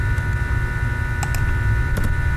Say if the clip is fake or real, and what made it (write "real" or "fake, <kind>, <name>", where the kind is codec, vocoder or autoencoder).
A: real